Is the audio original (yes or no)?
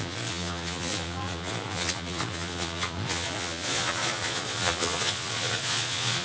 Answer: no